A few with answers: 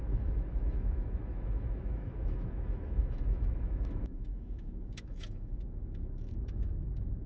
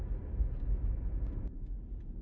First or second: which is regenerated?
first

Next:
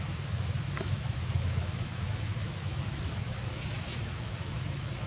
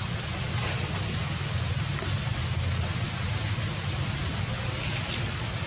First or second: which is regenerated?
first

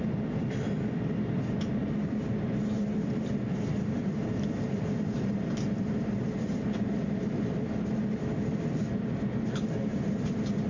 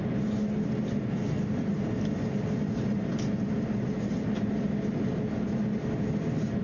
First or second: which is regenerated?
first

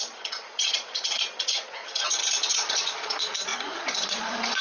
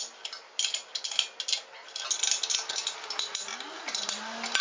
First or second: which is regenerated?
first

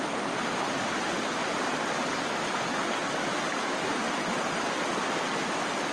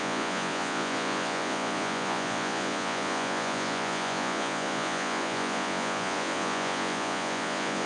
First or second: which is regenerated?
second